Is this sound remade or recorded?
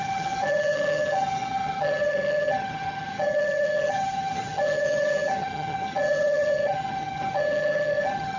remade